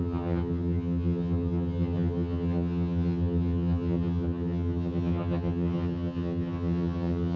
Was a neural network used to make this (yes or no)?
yes